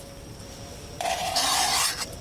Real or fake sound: fake